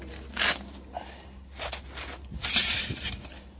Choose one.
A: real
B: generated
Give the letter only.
A